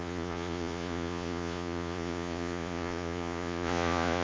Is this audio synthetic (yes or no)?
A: yes